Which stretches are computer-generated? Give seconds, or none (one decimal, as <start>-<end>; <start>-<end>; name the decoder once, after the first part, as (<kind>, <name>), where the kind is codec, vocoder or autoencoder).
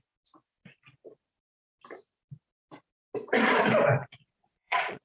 4.0-5.0 (vocoder, Vocos)